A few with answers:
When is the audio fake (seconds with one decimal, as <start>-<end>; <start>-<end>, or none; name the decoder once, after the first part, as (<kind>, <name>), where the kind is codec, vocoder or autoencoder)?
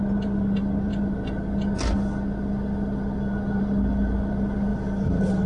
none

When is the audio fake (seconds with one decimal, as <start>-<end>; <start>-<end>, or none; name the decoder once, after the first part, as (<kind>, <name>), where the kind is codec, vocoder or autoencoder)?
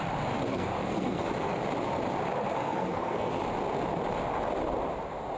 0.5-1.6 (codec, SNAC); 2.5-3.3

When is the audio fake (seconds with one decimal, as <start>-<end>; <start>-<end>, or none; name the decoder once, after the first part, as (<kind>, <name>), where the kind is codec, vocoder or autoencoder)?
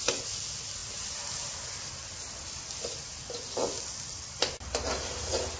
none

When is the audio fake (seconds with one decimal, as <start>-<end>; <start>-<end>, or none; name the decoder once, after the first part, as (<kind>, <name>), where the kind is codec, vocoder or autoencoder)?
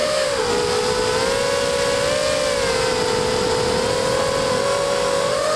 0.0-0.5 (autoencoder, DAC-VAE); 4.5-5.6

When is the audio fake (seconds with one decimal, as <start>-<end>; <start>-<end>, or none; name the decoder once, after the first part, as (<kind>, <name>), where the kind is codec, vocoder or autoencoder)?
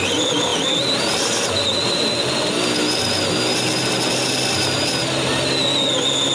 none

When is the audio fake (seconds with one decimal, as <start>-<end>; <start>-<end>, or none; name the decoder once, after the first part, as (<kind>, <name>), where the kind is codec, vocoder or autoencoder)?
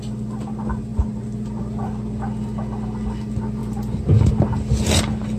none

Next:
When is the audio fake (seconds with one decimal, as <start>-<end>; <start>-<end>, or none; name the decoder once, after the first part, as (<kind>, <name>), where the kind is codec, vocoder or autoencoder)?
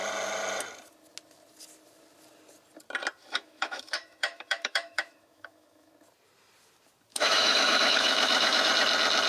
3.2-5.9 (autoencoder, DAC-VAE); 7.1-8.7